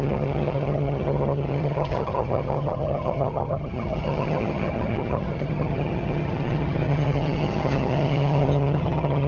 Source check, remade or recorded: remade